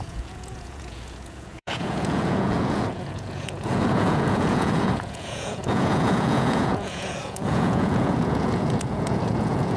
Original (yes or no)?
no